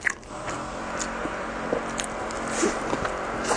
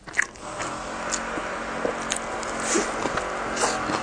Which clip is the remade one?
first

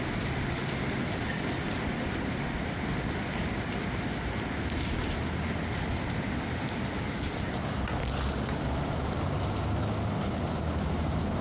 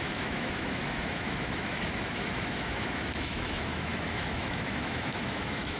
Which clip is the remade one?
second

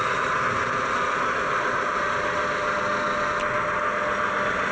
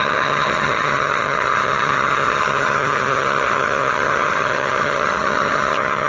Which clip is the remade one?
second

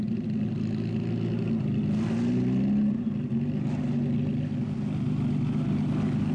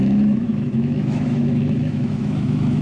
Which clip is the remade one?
second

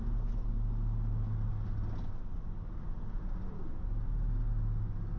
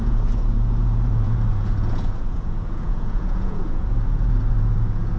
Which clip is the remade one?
second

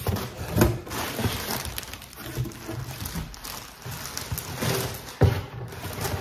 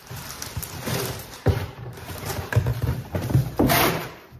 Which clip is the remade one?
second